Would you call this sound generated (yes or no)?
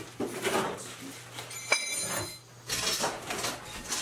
no